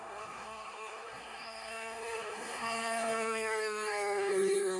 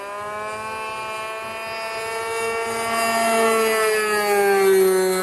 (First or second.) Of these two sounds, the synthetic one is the first